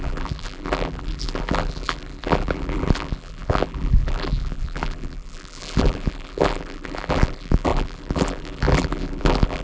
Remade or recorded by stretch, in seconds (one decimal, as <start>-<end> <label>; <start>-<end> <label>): 0.0-9.6 remade